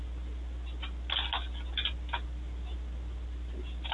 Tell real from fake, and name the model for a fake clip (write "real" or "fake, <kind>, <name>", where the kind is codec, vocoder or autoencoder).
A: real